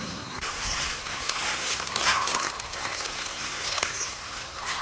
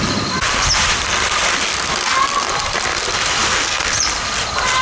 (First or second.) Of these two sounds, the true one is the second